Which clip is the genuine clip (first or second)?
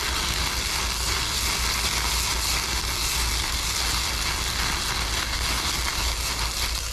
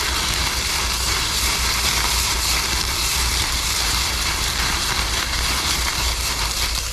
first